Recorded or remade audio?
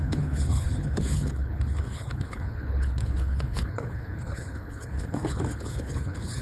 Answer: remade